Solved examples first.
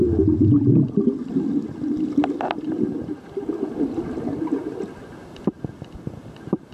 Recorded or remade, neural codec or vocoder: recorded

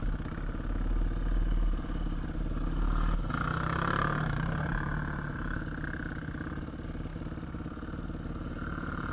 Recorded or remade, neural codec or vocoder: recorded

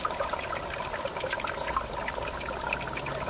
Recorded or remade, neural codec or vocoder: recorded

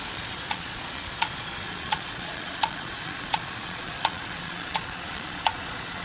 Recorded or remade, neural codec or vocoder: remade, vocoder, Vocos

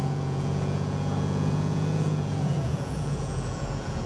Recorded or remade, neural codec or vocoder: remade, vocoder, Vocos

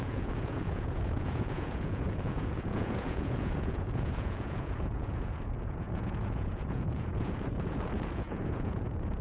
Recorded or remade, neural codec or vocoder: remade, vocoder, Vocos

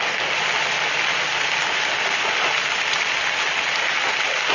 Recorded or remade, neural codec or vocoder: recorded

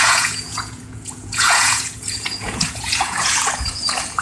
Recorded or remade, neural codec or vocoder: remade, vocoder, Vocos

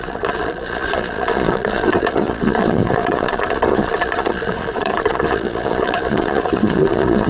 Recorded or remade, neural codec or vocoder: remade, vocoder, Vocos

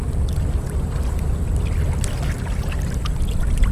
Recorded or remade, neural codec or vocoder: recorded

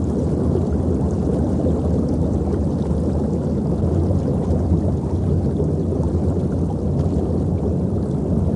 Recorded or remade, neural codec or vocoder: recorded